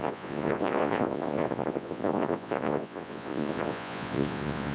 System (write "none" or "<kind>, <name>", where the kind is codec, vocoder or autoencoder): vocoder, Vocos